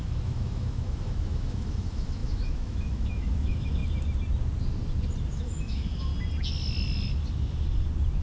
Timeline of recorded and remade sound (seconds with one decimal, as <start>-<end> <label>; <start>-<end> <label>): 0.0-3.8 remade; 3.8-5.3 recorded; 5.3-6.1 remade; 6.1-8.2 recorded